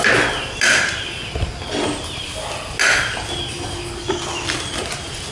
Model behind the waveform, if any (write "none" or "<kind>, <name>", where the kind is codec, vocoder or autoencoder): none